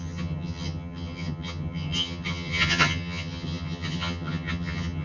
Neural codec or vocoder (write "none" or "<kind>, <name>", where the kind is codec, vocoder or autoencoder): vocoder, HiFi-GAN